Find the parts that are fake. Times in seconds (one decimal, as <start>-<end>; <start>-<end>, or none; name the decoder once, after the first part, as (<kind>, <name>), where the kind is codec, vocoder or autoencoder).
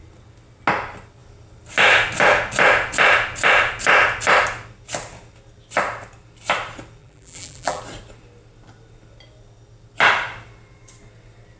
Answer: 7.0-7.8 (vocoder, BigVGAN v2)